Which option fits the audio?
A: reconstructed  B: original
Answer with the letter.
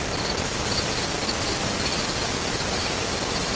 B